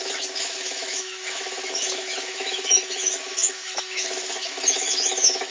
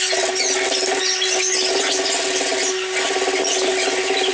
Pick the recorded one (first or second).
second